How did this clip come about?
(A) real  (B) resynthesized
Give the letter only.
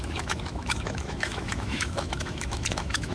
B